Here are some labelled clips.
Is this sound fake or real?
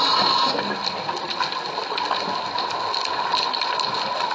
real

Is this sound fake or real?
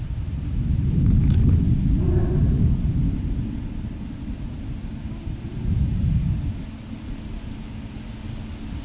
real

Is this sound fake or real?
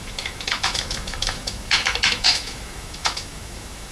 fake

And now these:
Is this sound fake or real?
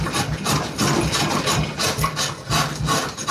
real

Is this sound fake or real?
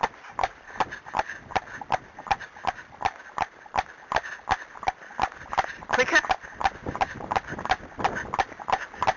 real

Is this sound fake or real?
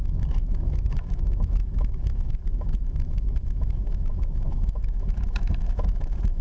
fake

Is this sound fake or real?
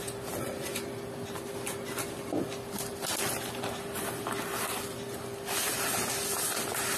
real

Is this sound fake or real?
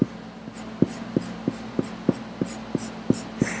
real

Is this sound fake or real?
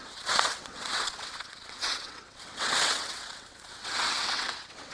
fake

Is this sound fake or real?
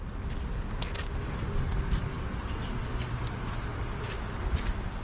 real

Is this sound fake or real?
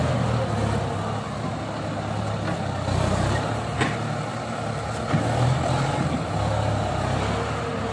real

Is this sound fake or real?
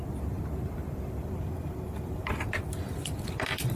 real